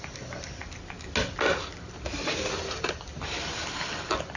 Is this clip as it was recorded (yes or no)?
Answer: yes